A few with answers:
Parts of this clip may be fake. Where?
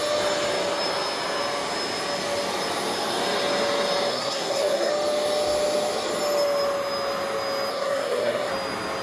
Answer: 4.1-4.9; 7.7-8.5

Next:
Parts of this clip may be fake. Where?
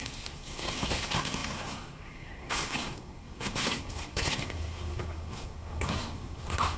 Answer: 0.0-6.8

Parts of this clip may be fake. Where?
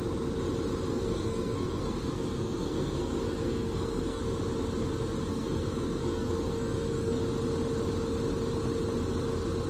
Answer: 0.9-4.2; 5.3-7.2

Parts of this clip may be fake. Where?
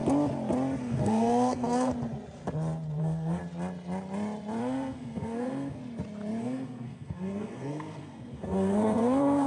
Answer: 0.8-1.9; 3.0-3.4; 4.6-5.8; 6.4-9.5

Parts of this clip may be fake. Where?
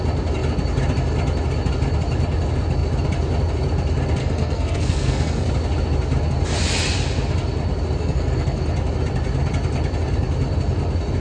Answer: 4.2-5.5; 8.0-8.7